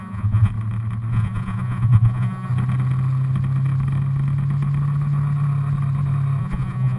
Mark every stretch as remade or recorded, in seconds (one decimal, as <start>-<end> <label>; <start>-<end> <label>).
0.0-0.5 remade; 0.5-1.1 recorded; 1.1-2.5 remade; 2.5-6.4 recorded; 6.4-7.0 remade

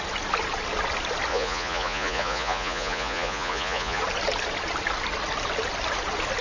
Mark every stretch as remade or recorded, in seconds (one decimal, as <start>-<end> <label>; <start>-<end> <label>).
0.0-1.3 recorded; 1.3-4.0 remade; 4.0-6.4 recorded